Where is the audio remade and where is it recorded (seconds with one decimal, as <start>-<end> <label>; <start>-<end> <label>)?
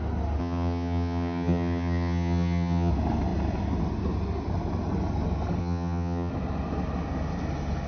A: 0.0-0.4 recorded; 0.4-2.9 remade; 2.9-5.6 recorded; 5.6-6.3 remade; 6.3-7.9 recorded